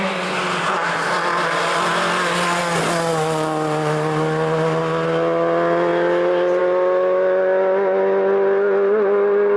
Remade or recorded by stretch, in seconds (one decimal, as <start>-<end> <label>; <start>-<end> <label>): 0.0-9.6 recorded